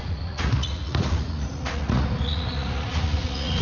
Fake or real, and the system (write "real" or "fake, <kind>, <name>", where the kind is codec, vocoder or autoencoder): fake, vocoder, Vocos